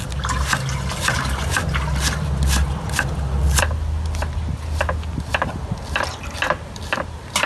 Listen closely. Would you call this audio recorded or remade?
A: recorded